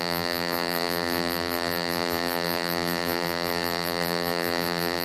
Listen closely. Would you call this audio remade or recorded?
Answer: remade